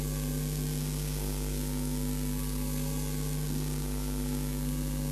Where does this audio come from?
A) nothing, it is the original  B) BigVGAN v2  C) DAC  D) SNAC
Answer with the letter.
D